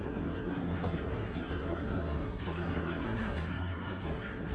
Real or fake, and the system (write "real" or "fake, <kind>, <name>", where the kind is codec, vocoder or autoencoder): fake, codec, SNAC